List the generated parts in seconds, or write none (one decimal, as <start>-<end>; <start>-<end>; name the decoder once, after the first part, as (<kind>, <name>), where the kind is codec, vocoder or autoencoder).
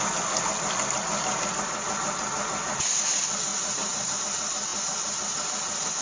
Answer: 3.5-4.2 (vocoder, BigVGAN v2)